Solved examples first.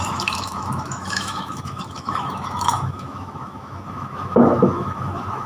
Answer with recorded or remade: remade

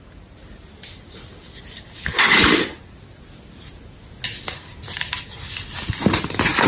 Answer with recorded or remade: recorded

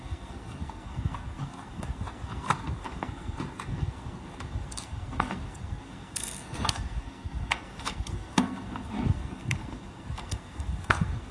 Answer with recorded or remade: remade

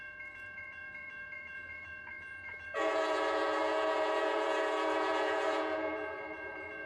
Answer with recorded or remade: remade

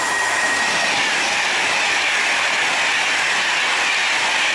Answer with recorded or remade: recorded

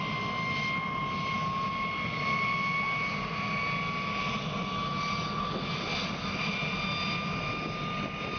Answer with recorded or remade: recorded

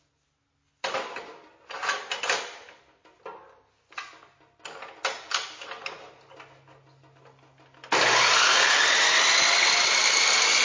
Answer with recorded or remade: recorded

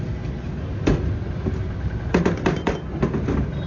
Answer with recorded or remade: recorded